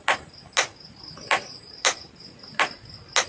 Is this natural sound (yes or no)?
yes